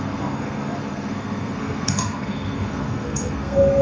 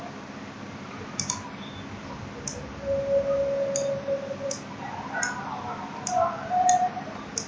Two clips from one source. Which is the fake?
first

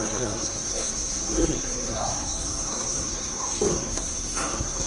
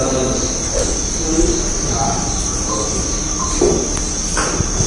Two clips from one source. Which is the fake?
first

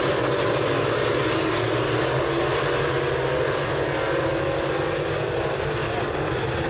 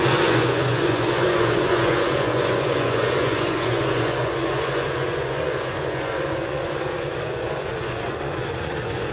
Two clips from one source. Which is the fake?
second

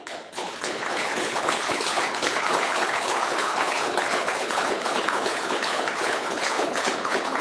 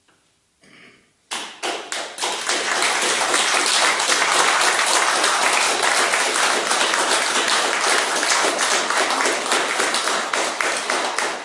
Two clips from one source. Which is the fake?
first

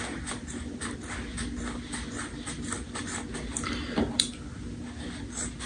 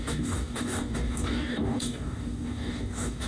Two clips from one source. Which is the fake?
second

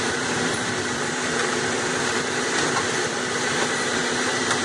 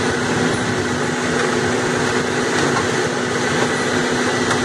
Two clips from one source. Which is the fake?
first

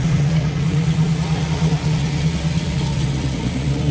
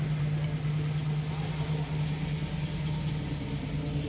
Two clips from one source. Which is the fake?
first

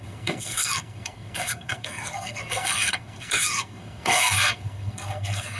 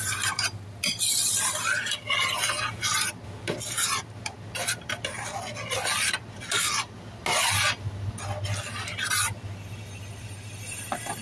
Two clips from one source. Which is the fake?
first